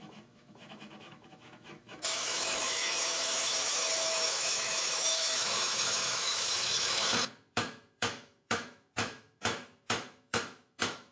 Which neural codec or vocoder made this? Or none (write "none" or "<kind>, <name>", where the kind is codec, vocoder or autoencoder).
autoencoder, DAC-VAE